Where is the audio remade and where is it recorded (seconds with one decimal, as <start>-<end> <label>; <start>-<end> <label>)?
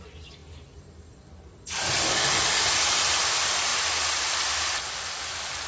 0.0-5.7 recorded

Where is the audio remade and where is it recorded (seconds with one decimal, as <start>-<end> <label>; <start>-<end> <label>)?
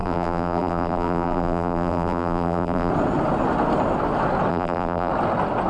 0.0-2.9 remade; 2.9-4.5 recorded; 4.5-5.1 remade; 5.1-5.7 recorded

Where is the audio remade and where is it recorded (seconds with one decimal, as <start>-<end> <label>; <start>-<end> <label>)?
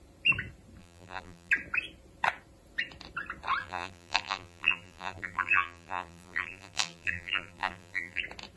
0.0-0.8 recorded; 0.8-1.5 remade; 1.5-3.6 recorded; 3.6-8.2 remade; 8.2-8.6 recorded